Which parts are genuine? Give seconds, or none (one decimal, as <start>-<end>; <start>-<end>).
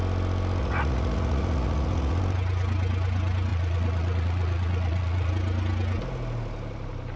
0.0-0.6; 2.2-3.5; 5.3-7.2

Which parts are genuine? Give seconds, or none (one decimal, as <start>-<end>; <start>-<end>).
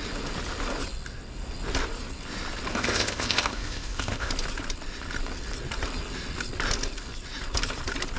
0.0-2.7; 4.3-8.2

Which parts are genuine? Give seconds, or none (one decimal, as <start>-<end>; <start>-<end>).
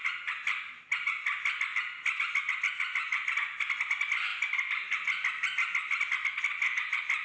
0.0-7.2